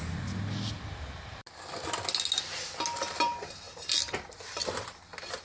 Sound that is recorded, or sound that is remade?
recorded